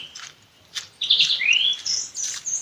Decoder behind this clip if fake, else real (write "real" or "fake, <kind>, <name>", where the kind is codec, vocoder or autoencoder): fake, vocoder, BigVGAN v2